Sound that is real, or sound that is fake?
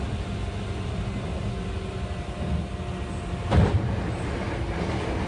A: real